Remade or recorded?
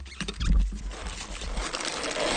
recorded